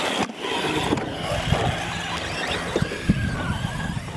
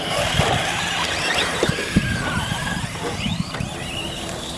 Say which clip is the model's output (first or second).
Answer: second